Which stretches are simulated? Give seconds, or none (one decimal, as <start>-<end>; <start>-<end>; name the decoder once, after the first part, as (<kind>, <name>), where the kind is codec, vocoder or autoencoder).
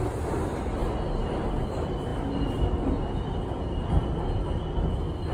none